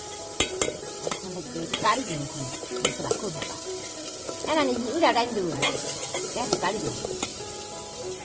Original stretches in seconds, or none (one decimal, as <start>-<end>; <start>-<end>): 4.1-6.1